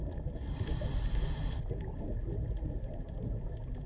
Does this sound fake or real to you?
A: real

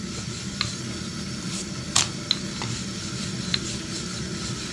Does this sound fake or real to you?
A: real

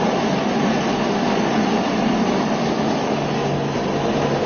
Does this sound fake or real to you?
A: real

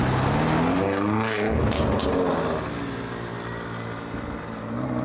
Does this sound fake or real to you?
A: real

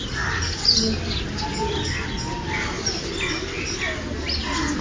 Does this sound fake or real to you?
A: real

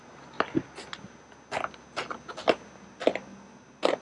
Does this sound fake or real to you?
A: real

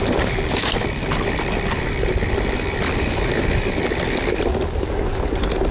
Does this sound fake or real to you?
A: real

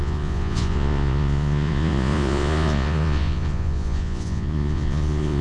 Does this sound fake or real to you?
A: fake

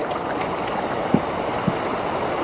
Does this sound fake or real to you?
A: real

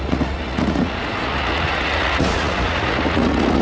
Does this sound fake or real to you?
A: fake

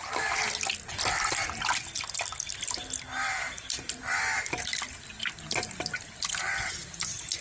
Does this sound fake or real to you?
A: real